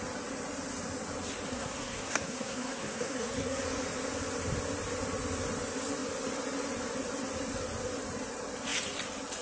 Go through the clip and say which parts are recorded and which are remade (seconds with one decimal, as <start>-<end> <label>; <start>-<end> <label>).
0.0-1.5 recorded; 1.5-3.6 remade; 3.6-9.4 recorded

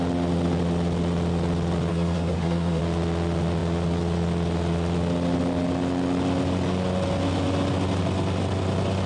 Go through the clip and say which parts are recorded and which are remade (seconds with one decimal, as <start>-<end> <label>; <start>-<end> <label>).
0.0-1.9 recorded; 1.9-2.8 remade; 2.8-9.1 recorded